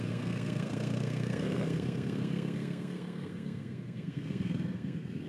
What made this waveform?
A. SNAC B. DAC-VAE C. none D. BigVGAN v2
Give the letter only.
A